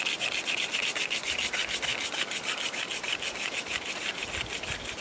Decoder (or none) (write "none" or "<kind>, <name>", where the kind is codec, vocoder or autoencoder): none